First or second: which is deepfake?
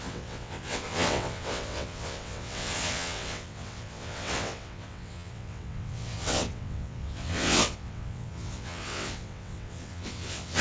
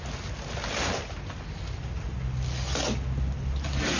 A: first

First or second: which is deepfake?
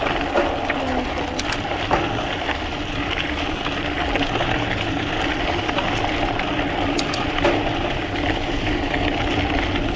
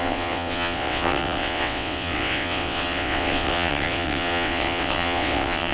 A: second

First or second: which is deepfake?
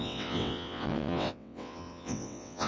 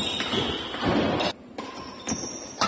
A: first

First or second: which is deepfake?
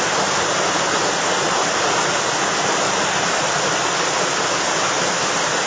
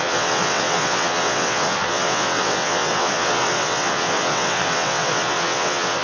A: second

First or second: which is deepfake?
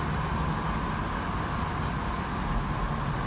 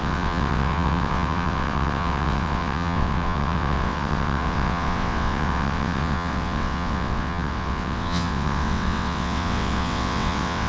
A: second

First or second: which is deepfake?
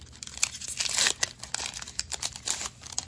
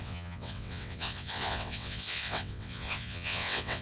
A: second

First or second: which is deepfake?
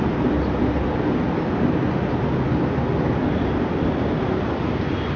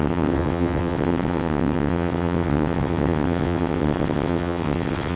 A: second